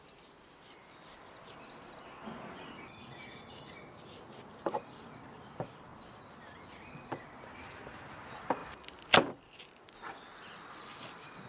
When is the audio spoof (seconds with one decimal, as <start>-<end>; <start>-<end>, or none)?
0.0-5.9; 7.4-11.5

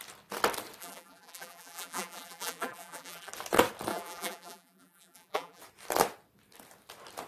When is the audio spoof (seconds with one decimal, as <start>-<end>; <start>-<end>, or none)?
0.8-3.3; 3.9-5.6

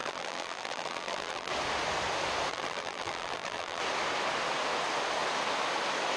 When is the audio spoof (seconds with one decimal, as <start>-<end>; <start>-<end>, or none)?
0.0-1.5; 2.5-3.8

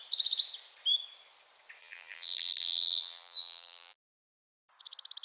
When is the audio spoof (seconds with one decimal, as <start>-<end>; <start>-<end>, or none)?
1.8-4.2

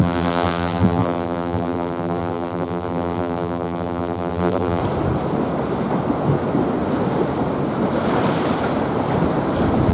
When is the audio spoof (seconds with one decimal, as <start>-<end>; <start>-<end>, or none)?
0.0-4.8

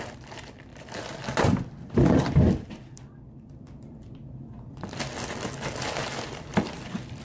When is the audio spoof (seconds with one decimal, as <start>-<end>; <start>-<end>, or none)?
0.7-5.0; 6.0-7.2

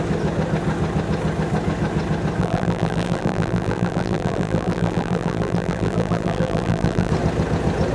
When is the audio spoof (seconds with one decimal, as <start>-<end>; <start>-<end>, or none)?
2.4-7.1

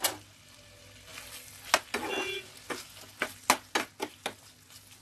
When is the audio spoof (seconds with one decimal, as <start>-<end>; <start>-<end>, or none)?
none